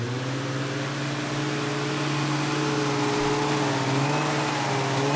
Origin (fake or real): real